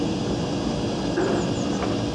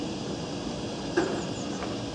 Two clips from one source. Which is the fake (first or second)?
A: second